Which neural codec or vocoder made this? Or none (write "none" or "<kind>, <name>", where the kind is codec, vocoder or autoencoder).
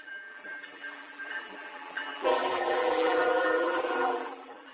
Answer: vocoder, BigVGAN v2